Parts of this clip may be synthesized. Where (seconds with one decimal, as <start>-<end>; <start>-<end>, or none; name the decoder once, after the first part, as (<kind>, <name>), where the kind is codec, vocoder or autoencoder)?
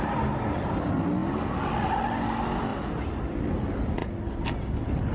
none